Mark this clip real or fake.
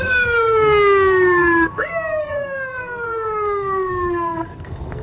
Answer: fake